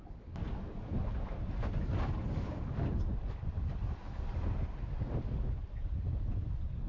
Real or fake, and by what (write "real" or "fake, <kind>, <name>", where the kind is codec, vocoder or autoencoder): real